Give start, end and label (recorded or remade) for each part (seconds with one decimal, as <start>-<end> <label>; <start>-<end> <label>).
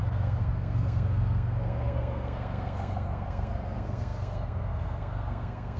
0.0-5.8 remade